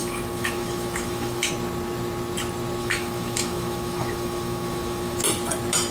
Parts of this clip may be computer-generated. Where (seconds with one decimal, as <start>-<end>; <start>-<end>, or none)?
0.0-1.5; 2.8-5.2